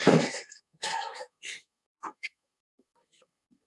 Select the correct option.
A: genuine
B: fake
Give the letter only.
B